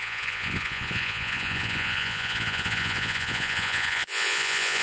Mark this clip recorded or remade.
remade